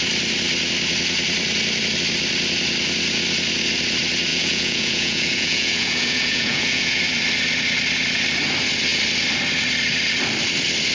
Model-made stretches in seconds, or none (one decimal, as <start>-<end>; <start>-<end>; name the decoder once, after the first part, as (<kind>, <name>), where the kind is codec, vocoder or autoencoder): 4.3-7.0 (vocoder, Vocos)